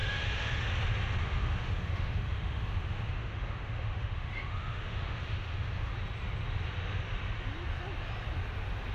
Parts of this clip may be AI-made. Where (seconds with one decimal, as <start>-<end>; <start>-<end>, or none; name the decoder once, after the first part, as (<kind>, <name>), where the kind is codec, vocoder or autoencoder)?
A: 0.0-0.6 (autoencoder, DAC-VAE); 1.2-5.9

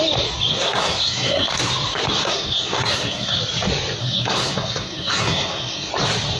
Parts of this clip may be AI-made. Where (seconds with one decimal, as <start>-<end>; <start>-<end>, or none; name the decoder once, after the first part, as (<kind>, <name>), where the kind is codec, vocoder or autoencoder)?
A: 0.5-1.6 (codec, SNAC); 2.1-3.4; 4.0-5.9